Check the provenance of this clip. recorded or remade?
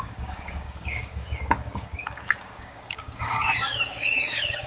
remade